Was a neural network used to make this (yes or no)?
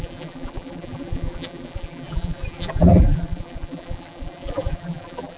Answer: yes